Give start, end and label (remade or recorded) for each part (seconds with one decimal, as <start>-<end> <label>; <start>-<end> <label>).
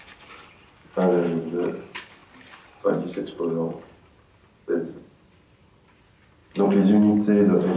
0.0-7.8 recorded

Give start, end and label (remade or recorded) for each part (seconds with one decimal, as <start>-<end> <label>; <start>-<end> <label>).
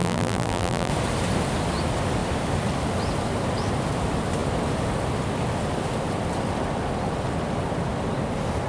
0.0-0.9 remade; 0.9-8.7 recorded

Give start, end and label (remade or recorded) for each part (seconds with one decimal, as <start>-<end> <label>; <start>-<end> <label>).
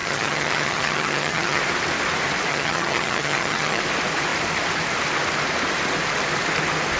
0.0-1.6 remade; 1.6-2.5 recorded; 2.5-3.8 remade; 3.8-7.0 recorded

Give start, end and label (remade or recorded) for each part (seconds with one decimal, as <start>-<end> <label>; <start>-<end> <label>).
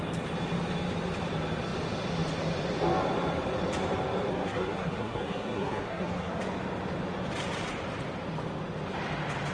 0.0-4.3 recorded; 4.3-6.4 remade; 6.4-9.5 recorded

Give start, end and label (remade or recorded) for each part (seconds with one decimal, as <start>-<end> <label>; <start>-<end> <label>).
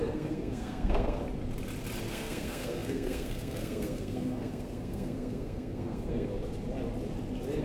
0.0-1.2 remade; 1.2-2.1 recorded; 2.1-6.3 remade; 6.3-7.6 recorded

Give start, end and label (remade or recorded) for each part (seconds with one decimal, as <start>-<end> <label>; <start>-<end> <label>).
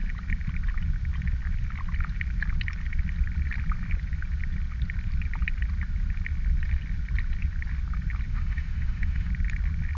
0.0-8.3 recorded; 8.3-9.3 remade; 9.3-10.0 recorded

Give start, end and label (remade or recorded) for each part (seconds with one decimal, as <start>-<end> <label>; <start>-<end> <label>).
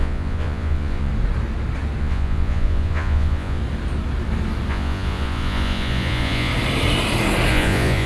0.0-1.1 remade; 1.1-2.0 recorded; 2.0-3.6 remade; 3.6-4.7 recorded; 4.7-6.5 remade; 6.5-7.5 recorded; 7.5-8.1 remade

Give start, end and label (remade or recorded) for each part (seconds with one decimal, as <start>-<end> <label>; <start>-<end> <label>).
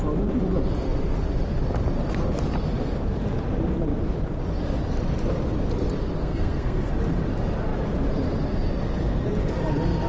0.0-6.2 recorded; 6.2-6.9 remade; 6.9-10.1 recorded